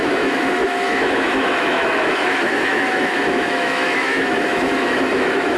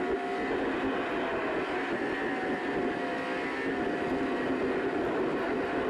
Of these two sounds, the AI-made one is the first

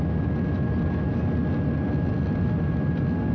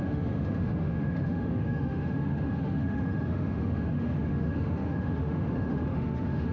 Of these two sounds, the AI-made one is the second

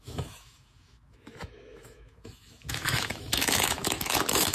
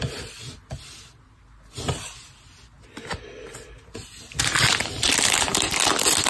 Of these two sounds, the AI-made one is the first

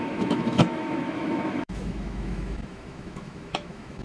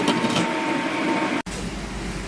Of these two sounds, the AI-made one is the first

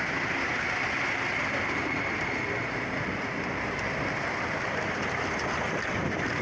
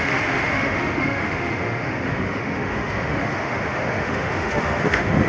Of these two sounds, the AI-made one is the second